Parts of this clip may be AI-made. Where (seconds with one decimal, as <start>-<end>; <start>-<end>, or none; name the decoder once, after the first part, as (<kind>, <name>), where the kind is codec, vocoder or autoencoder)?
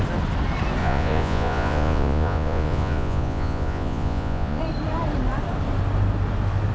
0.8-4.6 (vocoder, Vocos)